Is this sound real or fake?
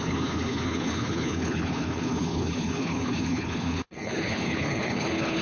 fake